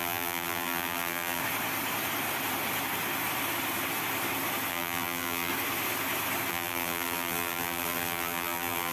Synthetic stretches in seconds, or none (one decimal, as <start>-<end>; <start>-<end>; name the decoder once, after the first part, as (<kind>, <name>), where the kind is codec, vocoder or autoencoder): 0.0-1.4 (vocoder, BigVGAN v2); 4.7-5.5; 6.5-8.9